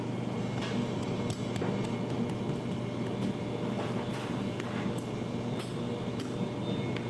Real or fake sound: real